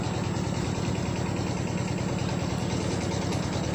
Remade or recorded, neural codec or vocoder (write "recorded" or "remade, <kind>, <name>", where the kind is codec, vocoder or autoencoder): recorded